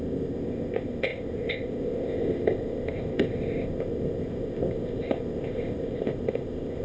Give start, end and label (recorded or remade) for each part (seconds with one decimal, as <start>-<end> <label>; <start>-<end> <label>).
0.0-6.8 remade